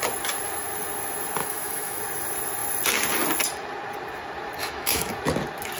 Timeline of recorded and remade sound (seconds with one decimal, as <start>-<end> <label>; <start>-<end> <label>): 0.0-1.4 recorded; 1.4-2.0 remade; 2.0-4.6 recorded; 4.6-5.1 remade; 5.1-5.8 recorded